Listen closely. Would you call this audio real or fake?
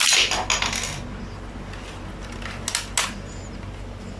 real